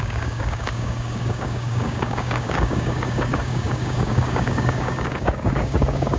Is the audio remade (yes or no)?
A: yes